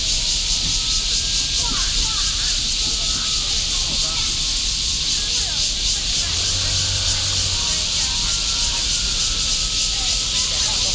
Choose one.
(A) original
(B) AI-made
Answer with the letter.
A